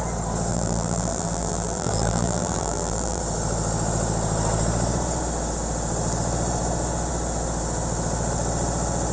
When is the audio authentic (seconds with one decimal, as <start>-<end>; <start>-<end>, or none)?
0.0-0.5; 3.2-9.1